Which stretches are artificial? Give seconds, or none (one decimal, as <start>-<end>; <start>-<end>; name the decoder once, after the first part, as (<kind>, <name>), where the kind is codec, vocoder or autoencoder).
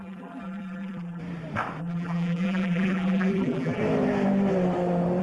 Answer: 0.0-1.2 (vocoder, BigVGAN v2); 1.8-3.8